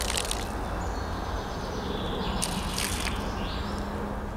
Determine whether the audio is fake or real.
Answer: real